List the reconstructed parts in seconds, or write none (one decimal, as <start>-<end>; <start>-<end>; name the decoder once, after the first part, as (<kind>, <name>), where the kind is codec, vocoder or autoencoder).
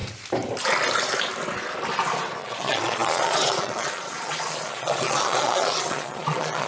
2.4-6.7 (vocoder, Vocos)